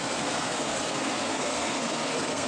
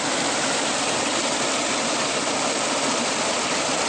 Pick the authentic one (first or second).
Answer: second